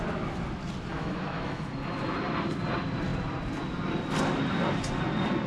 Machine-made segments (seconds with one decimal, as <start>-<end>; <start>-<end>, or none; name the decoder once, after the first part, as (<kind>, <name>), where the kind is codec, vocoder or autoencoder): 0.9-1.7 (autoencoder, DAC-VAE)